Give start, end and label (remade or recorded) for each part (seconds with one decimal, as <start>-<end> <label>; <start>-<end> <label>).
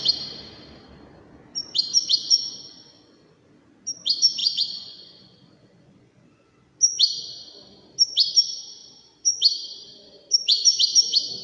0.0-2.2 recorded; 2.2-3.3 remade; 3.3-4.4 recorded; 4.4-6.5 remade; 6.5-11.4 recorded